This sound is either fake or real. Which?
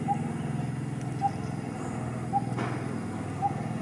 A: real